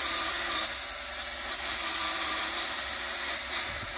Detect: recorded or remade recorded